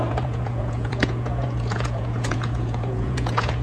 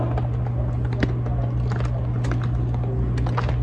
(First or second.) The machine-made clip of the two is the first